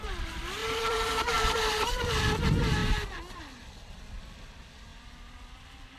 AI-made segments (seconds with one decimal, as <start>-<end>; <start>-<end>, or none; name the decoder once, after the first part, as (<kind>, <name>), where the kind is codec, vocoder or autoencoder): 0.6-2.1 (vocoder, BigVGAN v2)